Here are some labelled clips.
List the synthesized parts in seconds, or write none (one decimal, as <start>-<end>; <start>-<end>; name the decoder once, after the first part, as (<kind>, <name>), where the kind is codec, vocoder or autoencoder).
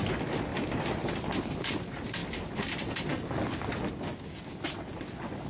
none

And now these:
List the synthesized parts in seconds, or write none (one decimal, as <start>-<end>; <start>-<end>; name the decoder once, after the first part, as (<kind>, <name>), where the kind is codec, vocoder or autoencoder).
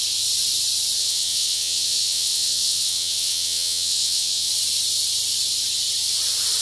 1.0-4.5 (vocoder, WaveNeXt)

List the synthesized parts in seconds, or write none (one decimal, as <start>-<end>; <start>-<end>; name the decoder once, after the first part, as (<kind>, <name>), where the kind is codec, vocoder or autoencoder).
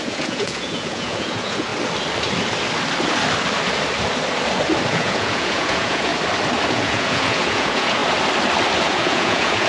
0.0-1.7 (vocoder, Vocos); 4.9-6.1; 6.7-8.0; 8.8-9.7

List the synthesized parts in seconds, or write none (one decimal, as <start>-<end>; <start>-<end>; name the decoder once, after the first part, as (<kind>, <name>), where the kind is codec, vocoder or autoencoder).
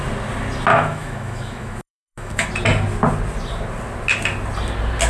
0.7-2.5 (autoencoder, DAC-VAE)